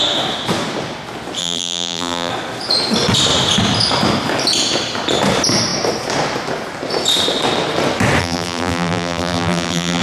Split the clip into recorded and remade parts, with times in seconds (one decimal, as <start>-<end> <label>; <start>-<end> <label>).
0.0-1.4 recorded; 1.4-2.3 remade; 2.3-8.2 recorded; 8.2-10.0 remade